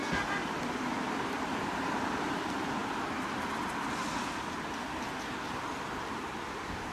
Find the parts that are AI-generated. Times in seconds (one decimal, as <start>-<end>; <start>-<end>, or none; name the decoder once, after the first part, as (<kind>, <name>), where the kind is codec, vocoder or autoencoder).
0.0-2.8 (vocoder, BigVGAN v2); 3.3-6.9